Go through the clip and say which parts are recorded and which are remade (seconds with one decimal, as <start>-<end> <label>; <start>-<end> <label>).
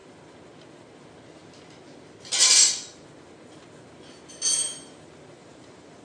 0.0-5.4 recorded; 5.4-6.0 remade